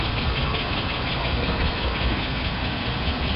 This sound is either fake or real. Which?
fake